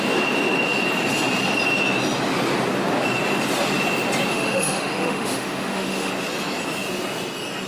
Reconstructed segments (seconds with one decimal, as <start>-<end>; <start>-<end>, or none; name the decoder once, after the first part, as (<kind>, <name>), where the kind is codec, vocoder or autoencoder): 4.3-6.1 (autoencoder, DAC-VAE)